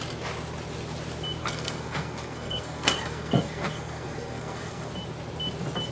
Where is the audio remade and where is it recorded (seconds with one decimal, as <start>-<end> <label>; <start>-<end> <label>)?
0.0-1.4 recorded; 1.4-4.9 remade; 4.9-5.9 recorded